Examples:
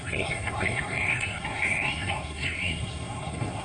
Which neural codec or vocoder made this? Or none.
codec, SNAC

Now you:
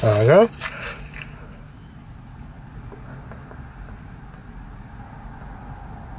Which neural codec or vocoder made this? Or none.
none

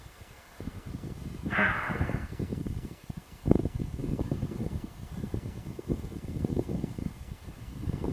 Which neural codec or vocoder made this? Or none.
codec, SNAC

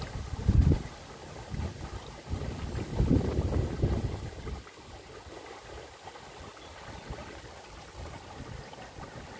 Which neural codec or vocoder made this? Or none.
none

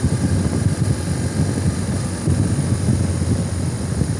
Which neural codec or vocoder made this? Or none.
none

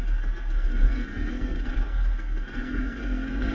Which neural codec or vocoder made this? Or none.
codec, SNAC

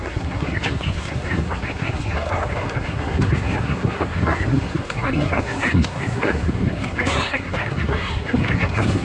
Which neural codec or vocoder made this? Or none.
codec, SNAC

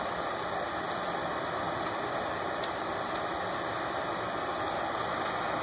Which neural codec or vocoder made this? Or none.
none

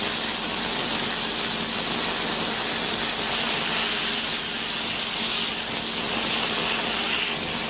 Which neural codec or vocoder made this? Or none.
none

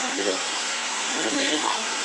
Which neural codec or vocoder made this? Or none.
codec, SNAC